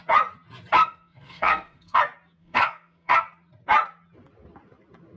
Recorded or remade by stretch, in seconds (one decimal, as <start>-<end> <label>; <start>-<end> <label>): 0.0-0.8 recorded; 0.8-2.0 remade; 2.0-2.4 recorded; 2.4-3.2 remade; 3.2-5.2 recorded